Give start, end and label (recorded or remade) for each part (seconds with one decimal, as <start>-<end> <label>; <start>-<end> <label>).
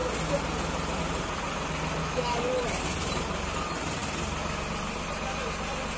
0.0-2.0 recorded; 2.0-2.6 remade; 2.6-6.0 recorded